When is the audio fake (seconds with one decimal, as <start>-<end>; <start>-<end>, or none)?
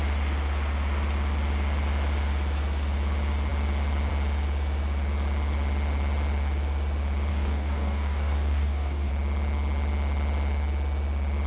7.3-9.1